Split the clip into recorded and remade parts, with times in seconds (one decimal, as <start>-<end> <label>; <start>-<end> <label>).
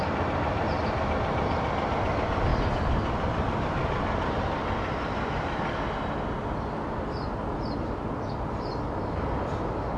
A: 0.0-10.0 recorded